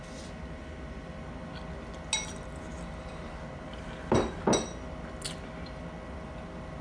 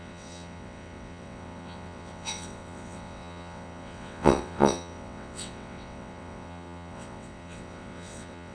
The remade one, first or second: second